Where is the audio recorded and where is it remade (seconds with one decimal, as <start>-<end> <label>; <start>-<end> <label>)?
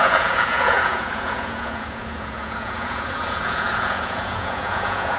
0.0-5.2 remade